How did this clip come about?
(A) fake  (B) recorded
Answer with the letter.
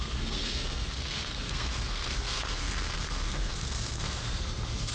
A